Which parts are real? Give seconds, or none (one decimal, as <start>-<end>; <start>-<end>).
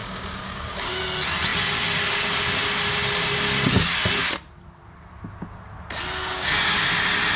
1.0-6.2; 6.9-7.4